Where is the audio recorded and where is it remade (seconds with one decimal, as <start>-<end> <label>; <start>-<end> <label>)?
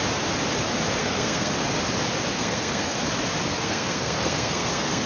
0.0-1.0 recorded; 1.0-1.5 remade; 1.5-2.3 recorded; 2.3-3.0 remade; 3.0-3.5 recorded; 3.5-5.1 remade